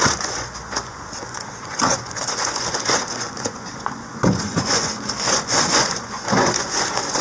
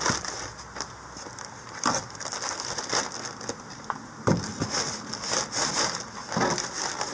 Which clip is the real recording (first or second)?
second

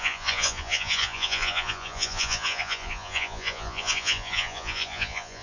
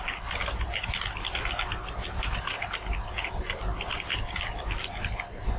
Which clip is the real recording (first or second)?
second